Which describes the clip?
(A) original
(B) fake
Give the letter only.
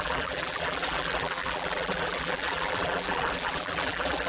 B